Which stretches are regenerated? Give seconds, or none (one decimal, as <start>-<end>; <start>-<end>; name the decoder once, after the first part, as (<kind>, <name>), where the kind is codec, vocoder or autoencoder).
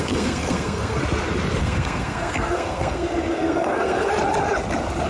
0.0-1.0 (codec, SNAC); 1.6-4.1